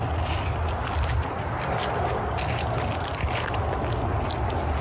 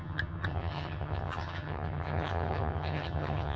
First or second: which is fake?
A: second